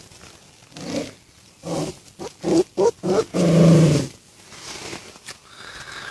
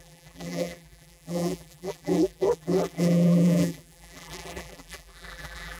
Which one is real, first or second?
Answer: first